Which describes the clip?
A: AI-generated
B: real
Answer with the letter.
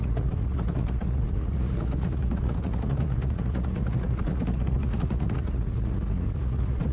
A